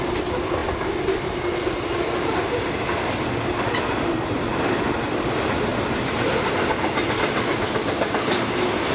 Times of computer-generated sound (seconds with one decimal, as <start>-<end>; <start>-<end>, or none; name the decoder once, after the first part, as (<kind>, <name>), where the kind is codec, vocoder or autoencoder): none